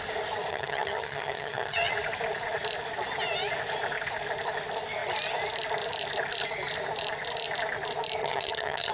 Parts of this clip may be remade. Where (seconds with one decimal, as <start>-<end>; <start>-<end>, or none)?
0.5-1.9; 8.2-8.9